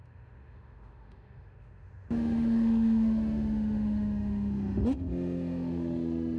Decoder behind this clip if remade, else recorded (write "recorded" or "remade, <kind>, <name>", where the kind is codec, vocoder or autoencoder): remade, autoencoder, DAC-VAE